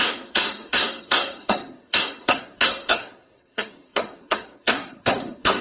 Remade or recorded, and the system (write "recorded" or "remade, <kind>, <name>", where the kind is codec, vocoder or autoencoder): remade, codec, SNAC